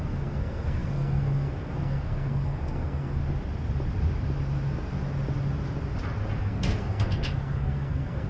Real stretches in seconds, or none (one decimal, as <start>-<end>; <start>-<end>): 3.2-6.4

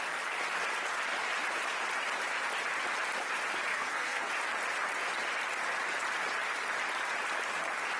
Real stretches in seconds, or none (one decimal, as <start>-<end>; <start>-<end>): 0.0-3.7; 4.3-8.0

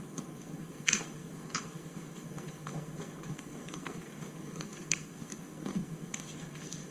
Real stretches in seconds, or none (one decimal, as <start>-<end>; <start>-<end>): none